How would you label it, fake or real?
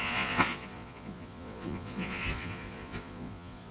fake